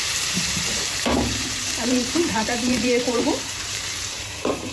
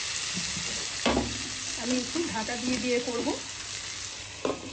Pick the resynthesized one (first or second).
first